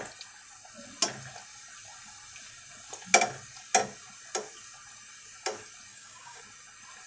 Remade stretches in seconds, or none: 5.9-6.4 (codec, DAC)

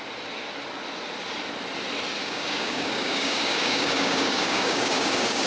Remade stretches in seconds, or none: 2.2-5.5 (codec, DAC)

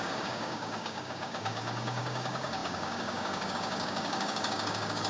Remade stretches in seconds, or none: 0.0-5.1 (codec, DAC)

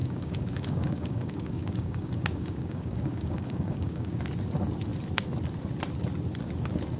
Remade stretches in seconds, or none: 0.0-4.2 (codec, DAC)

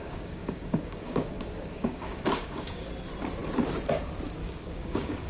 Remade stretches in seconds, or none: 0.0-2.9 (codec, DAC); 4.4-5.3

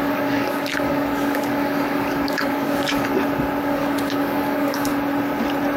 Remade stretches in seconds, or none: 0.0-3.1 (codec, DAC); 3.6-4.9

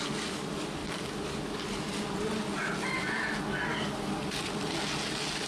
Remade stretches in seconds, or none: none

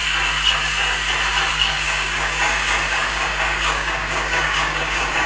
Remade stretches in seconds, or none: 1.5-5.3 (codec, DAC)